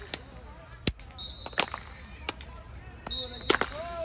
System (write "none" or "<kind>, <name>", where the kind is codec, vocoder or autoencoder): none